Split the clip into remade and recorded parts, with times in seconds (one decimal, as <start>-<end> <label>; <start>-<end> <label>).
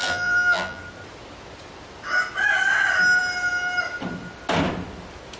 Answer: 0.0-0.8 remade; 0.8-5.4 recorded